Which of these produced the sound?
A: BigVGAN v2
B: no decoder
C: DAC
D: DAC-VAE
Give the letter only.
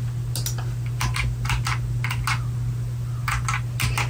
B